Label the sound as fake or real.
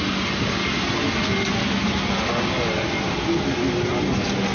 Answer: real